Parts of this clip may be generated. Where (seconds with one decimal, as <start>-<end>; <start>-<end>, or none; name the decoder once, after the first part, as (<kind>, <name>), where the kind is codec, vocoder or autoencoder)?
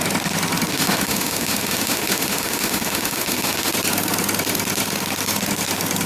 0.7-3.7 (autoencoder, DAC-VAE)